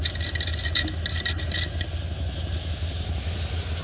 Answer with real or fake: real